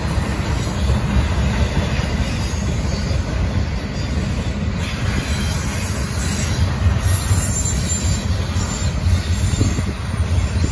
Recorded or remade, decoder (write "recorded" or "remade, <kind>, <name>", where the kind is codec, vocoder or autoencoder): recorded